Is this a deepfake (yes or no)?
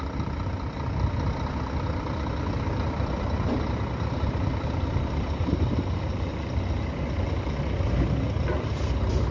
no